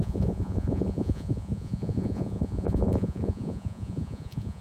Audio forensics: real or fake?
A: fake